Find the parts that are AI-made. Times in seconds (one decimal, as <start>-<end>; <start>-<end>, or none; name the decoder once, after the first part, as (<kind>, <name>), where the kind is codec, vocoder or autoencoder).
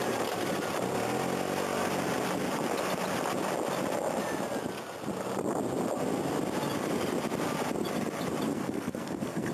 8.5-9.5 (codec, SNAC)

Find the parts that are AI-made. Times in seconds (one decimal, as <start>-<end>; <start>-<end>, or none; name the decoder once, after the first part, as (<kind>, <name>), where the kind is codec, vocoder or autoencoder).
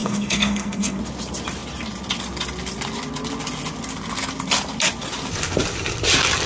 0.0-1.0 (codec, SNAC)